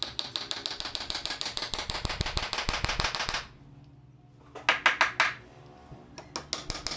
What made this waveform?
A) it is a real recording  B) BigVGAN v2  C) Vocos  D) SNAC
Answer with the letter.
A